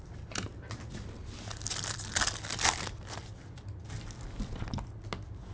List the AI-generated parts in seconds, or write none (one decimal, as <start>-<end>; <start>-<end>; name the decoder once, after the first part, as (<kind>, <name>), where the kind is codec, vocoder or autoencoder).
none